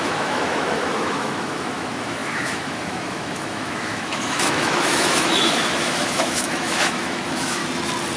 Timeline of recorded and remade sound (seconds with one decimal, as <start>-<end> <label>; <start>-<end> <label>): 0.0-7.6 remade; 7.6-8.2 recorded